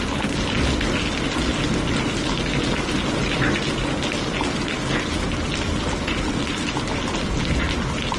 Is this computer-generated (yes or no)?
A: no